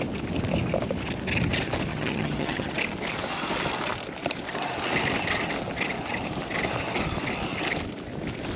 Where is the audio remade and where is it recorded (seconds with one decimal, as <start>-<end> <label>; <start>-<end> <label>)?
0.0-1.9 recorded; 1.9-2.7 remade; 2.7-8.6 recorded